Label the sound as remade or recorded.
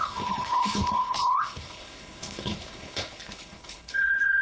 remade